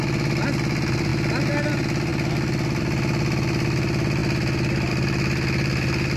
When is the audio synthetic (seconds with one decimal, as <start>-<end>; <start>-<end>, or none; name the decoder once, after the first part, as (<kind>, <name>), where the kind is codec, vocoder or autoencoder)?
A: none